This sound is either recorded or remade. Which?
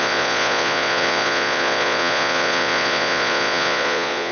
remade